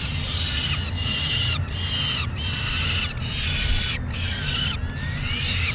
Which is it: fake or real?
real